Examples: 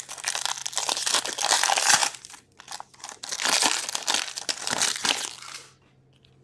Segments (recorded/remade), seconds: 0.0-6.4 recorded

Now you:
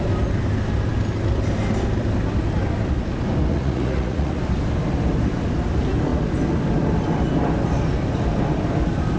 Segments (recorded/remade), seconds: 0.0-3.5 recorded; 3.5-4.4 remade; 4.4-9.2 recorded

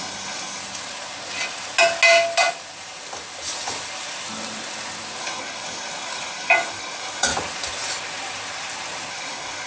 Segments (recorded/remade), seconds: 0.0-0.6 remade; 0.6-5.2 recorded; 5.2-7.3 remade; 7.3-9.1 recorded; 9.1-9.7 remade

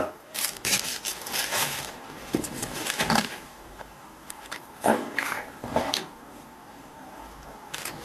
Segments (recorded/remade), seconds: 0.0-8.0 remade

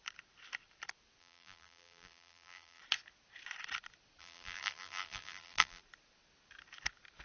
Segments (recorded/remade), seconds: 0.0-1.2 recorded; 1.2-2.8 remade; 2.8-4.2 recorded; 4.2-5.8 remade; 5.8-7.2 recorded

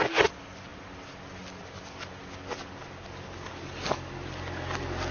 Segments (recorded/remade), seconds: 0.0-5.1 recorded